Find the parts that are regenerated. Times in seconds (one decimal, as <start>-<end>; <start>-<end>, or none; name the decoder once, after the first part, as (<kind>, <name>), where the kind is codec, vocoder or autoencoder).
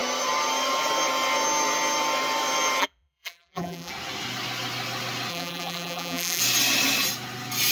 2.8-3.9 (vocoder, BigVGAN v2); 5.3-6.4